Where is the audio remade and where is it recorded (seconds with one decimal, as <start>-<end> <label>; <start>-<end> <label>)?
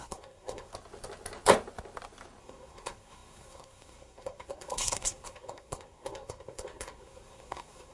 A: 0.0-0.7 remade; 0.7-2.4 recorded; 2.4-7.9 remade